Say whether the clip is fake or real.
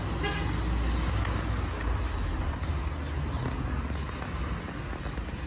real